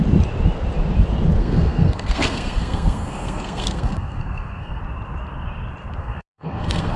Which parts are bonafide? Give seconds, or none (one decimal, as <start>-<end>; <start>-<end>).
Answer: 0.0-1.4; 4.8-6.0